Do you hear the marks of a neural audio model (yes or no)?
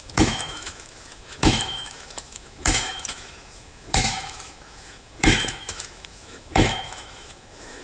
yes